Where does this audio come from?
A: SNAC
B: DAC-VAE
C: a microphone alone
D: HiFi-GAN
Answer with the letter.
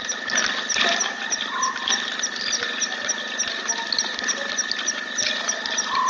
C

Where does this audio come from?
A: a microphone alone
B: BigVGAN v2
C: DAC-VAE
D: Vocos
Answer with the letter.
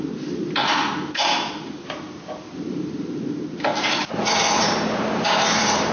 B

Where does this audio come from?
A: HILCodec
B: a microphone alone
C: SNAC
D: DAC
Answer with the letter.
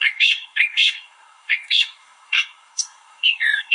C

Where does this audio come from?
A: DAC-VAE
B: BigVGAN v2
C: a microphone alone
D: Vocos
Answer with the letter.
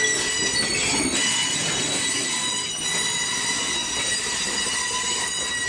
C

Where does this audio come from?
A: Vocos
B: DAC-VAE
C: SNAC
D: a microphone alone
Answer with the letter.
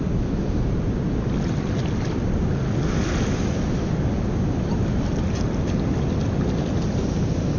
D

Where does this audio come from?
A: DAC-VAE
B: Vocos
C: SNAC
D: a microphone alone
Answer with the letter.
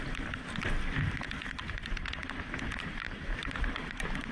D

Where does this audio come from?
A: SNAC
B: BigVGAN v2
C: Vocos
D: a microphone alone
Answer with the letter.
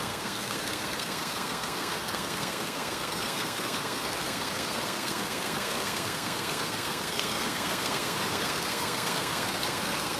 A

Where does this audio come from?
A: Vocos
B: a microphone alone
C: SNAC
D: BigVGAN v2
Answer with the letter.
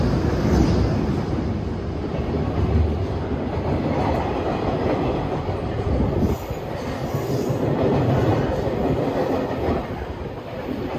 B